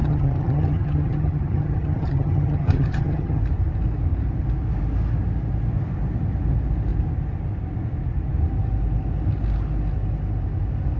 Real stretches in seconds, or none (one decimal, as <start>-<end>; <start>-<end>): 3.4-11.0